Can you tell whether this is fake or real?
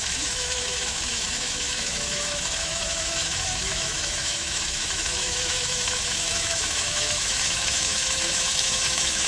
fake